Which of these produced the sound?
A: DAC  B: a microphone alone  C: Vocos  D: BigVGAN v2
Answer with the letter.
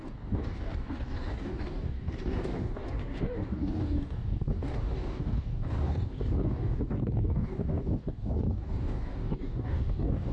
A